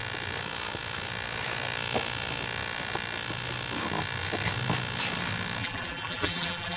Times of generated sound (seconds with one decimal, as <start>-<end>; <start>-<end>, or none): 5.6-6.8